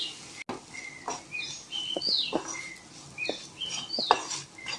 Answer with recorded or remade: recorded